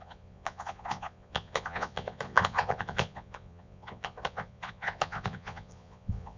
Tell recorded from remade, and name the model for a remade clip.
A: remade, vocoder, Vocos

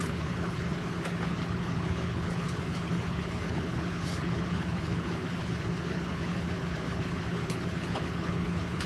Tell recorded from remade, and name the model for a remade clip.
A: remade, codec, HILCodec